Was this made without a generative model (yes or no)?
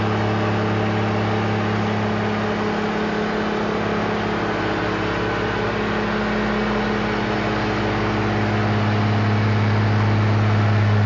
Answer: yes